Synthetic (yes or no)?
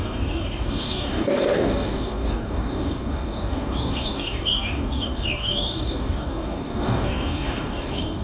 yes